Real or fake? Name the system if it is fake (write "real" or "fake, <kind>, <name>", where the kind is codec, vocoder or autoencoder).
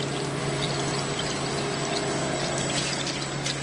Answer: real